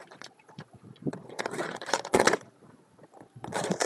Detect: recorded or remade remade